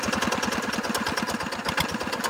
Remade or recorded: recorded